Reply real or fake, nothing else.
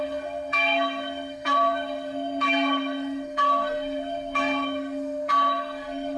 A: fake